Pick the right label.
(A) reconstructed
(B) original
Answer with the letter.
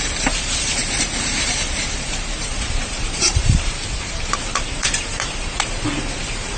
A